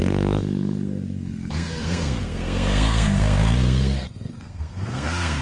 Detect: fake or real fake